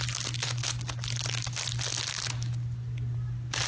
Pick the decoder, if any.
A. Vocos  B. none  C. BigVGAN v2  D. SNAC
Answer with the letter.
B